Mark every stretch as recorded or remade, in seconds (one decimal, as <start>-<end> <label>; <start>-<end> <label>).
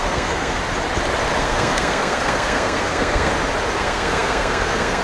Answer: 0.0-0.6 remade; 0.6-1.4 recorded; 1.4-3.3 remade; 3.3-3.8 recorded; 3.8-5.0 remade